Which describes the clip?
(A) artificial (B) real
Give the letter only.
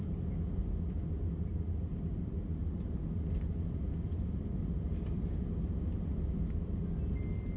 B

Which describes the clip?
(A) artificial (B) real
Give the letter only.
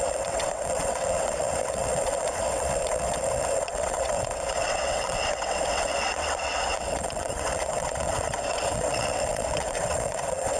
A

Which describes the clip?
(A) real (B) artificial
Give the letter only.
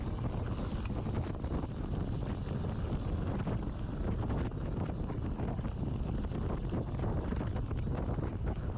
A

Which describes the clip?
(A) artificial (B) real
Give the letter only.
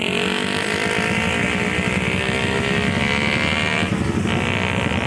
B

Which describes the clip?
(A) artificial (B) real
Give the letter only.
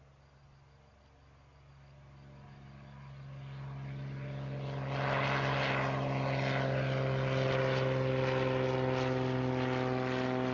B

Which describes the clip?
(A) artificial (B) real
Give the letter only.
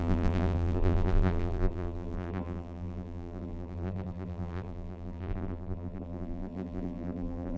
A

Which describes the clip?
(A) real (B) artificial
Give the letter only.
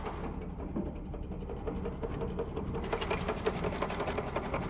A